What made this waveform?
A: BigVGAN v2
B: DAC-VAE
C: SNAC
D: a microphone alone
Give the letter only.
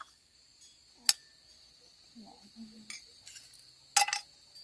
D